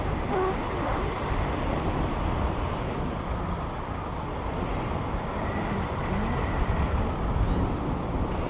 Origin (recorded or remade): recorded